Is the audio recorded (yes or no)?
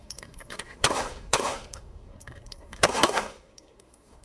no